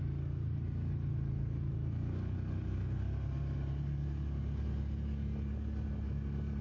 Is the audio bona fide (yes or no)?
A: yes